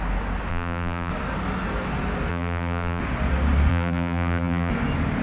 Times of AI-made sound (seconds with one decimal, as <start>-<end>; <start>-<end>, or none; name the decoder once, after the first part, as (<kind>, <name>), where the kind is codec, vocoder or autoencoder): 0.5-1.1 (vocoder, BigVGAN v2); 2.3-3.0; 3.7-4.7